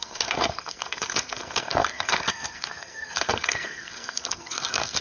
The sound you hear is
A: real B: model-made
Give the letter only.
B